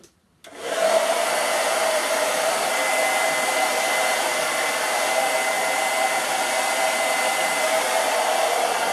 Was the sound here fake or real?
real